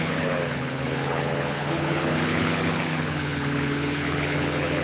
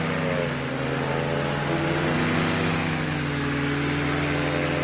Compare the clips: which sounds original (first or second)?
second